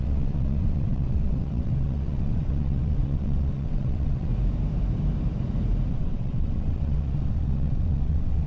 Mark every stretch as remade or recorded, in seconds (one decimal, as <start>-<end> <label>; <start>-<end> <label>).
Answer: 0.0-4.3 remade; 4.3-5.9 recorded; 5.9-8.5 remade